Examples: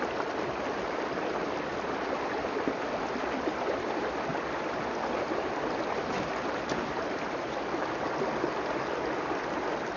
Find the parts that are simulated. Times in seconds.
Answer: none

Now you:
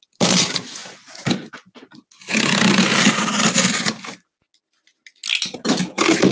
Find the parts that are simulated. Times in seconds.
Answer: none

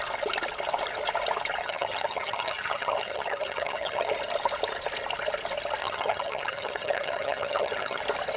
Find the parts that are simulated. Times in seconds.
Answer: 1.6-4.1 (vocoder, HiFi-GAN); 5.8-8.0